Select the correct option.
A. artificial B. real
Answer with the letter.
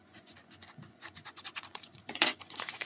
A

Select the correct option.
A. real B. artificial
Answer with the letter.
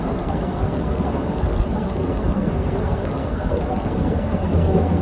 B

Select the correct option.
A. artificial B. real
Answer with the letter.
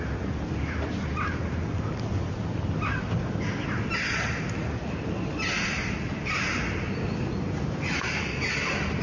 B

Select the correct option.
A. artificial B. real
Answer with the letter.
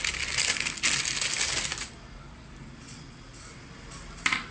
B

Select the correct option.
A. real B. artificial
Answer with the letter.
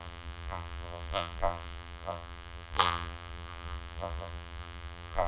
B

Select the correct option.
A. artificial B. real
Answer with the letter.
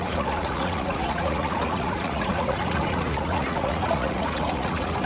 A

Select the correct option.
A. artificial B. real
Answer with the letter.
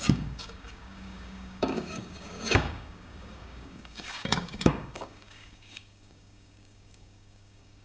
A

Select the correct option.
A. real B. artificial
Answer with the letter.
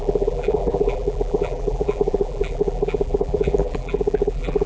B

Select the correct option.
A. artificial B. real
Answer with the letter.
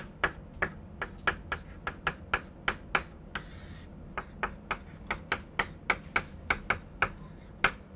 B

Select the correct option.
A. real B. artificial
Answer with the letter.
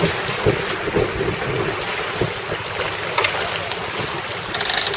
A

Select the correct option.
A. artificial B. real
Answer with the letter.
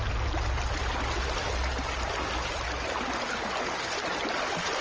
B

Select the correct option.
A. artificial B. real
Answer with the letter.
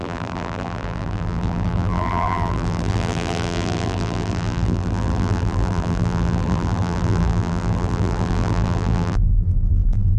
A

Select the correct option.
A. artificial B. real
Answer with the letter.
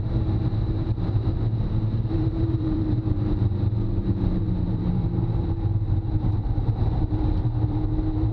A